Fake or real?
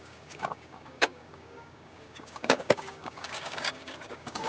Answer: fake